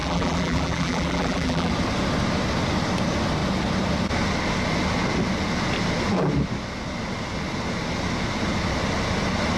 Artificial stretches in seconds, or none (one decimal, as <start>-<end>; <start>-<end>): 0.0-1.7